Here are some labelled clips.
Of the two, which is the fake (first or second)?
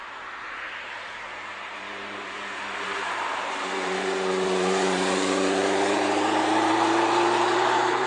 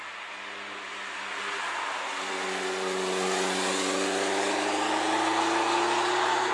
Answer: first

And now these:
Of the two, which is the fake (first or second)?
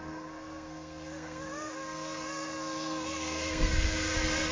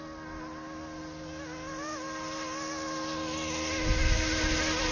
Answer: first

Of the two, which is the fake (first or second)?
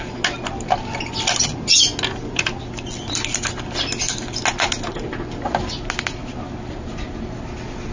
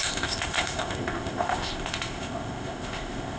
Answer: second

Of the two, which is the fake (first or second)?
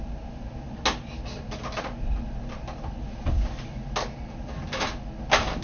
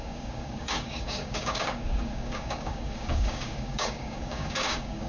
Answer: second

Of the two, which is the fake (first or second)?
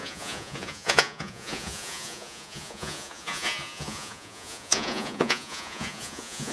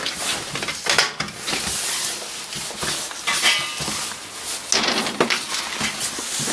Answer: first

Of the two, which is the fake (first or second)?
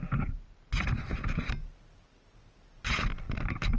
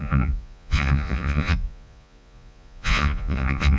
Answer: second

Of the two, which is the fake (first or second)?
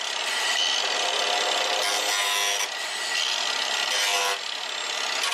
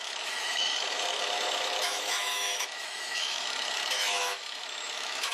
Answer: second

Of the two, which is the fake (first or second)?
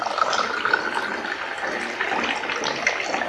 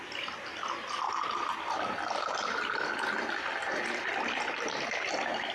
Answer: second